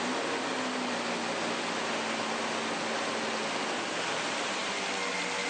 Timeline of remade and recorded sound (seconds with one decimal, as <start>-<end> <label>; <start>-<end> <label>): 0.0-5.5 recorded